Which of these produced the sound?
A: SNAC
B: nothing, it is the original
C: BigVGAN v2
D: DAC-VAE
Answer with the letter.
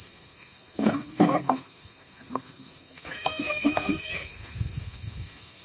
A